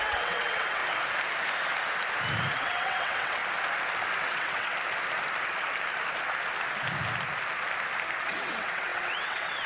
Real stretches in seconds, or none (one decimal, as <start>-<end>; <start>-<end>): 0.8-2.5; 3.4-4.2; 4.7-8.2